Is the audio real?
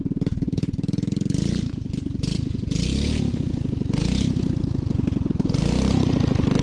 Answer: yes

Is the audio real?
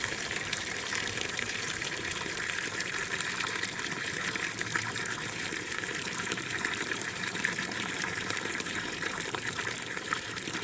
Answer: no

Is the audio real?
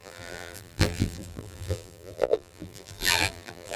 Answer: no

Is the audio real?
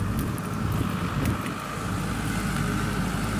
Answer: yes